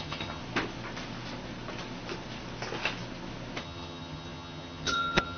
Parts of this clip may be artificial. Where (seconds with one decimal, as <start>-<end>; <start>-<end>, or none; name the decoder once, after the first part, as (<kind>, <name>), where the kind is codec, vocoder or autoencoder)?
0.0-0.4 (vocoder, HiFi-GAN); 3.6-5.4